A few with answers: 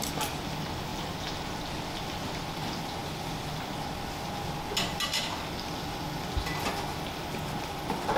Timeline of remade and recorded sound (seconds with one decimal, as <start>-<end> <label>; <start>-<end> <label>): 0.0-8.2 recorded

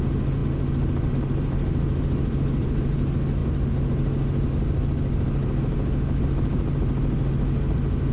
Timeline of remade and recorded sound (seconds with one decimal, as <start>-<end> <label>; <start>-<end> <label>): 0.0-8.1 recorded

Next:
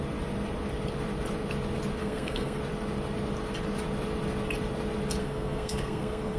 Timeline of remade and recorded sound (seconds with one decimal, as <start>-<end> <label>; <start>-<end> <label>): 0.0-2.0 recorded; 2.0-2.6 remade; 2.6-5.2 recorded; 5.2-6.4 remade

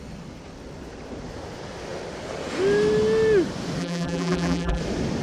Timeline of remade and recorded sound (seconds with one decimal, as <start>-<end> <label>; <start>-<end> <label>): 0.0-3.8 recorded; 3.8-4.8 remade; 4.8-5.2 recorded

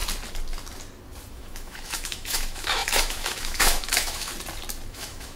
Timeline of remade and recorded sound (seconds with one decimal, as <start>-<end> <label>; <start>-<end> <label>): 0.0-1.3 recorded; 1.3-4.3 remade; 4.3-4.9 recorded; 4.9-5.4 remade

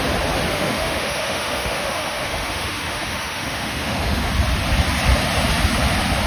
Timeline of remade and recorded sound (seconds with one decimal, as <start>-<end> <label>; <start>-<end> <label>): 0.0-0.5 recorded; 0.5-4.3 remade; 4.3-6.3 recorded

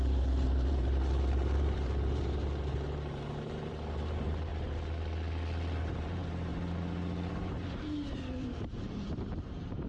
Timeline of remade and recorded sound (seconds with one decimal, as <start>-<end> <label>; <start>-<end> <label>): 0.0-4.5 remade; 4.5-5.8 recorded; 5.8-6.5 remade; 6.5-7.3 recorded; 7.3-9.9 remade